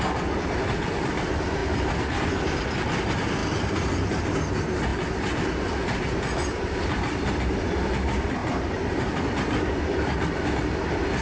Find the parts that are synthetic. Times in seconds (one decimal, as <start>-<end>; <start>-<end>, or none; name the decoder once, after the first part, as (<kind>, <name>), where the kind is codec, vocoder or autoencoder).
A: 3.4-3.9 (vocoder, BigVGAN v2); 8.4-10.5